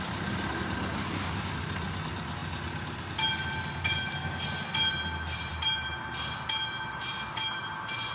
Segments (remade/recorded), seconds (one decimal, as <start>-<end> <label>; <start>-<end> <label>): 0.0-5.5 recorded; 5.5-6.0 remade; 6.0-8.1 recorded